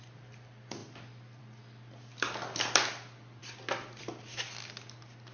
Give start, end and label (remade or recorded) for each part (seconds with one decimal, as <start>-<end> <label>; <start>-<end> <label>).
0.0-5.3 recorded

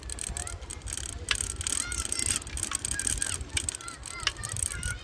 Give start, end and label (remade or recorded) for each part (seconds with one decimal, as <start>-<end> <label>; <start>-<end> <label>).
0.0-5.0 recorded

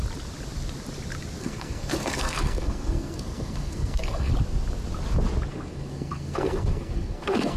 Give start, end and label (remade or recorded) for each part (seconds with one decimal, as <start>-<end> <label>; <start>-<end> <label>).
0.0-1.4 recorded; 1.4-4.3 remade; 4.3-5.5 recorded; 5.5-7.6 remade

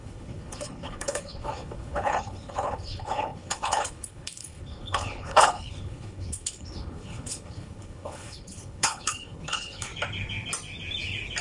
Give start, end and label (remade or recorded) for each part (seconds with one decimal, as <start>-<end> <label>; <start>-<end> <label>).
0.0-9.9 remade; 9.9-11.4 recorded

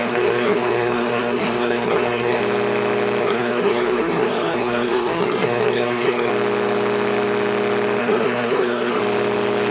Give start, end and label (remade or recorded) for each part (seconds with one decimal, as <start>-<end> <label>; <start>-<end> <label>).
0.0-2.4 remade; 2.4-3.2 recorded; 3.2-6.3 remade; 6.3-8.0 recorded; 8.0-9.0 remade; 9.0-9.7 recorded

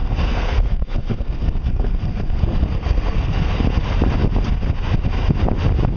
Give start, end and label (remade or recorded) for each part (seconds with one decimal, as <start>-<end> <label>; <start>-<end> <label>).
0.0-3.6 remade; 3.6-6.0 recorded